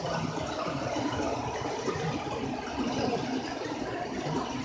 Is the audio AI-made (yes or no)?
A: no